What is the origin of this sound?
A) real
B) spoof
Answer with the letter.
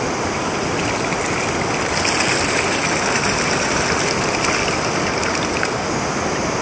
A